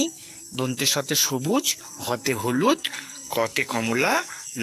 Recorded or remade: remade